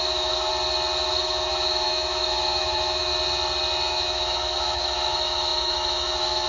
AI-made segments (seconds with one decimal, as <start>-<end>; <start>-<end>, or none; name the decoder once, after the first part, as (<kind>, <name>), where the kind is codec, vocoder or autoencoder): 0.0-0.5 (autoencoder, DAC-VAE); 1.1-3.1; 3.9-6.5